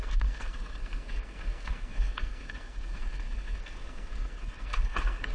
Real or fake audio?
fake